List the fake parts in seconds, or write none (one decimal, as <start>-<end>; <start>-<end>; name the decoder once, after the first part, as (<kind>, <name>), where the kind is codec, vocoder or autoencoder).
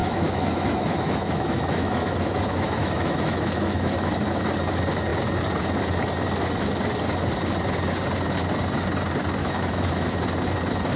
0.0-4.1 (autoencoder, DAC-VAE); 9.4-10.1